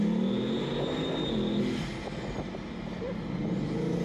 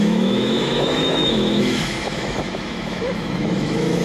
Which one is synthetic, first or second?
second